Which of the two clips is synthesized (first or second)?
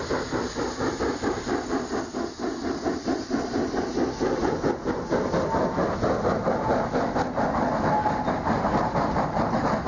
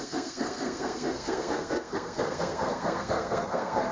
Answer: second